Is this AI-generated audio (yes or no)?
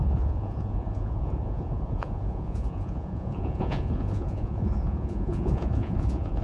yes